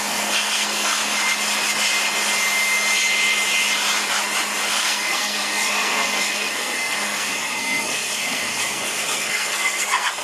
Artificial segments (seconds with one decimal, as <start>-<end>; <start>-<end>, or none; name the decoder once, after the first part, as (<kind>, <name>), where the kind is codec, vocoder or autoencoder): 0.0-1.0 (codec, SNAC); 4.7-10.2